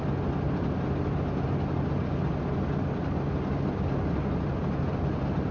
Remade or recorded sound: recorded